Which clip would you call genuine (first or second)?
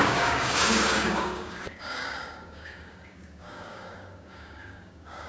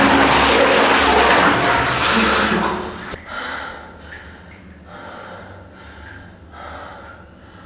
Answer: second